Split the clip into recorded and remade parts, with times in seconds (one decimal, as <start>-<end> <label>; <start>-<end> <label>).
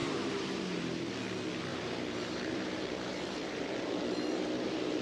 0.0-1.1 remade; 1.1-1.7 recorded; 1.7-3.7 remade; 3.7-5.0 recorded